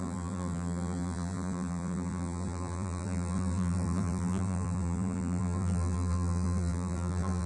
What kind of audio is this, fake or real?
fake